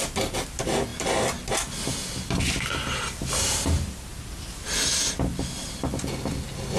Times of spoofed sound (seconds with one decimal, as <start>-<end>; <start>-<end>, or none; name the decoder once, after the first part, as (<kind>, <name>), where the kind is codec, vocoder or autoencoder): none